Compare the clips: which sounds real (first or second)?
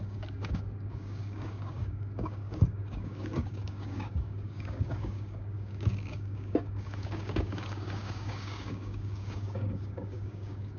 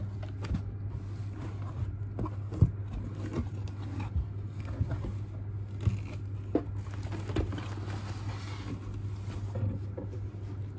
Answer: second